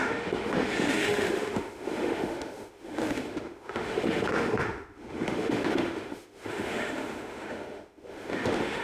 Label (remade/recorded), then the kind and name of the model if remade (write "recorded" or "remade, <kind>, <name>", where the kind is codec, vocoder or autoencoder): remade, autoencoder, DAC-VAE